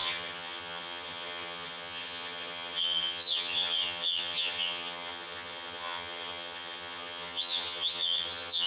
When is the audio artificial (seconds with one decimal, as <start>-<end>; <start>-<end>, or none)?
0.0-8.7

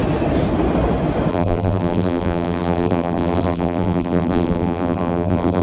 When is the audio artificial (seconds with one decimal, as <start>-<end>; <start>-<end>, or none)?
1.3-5.6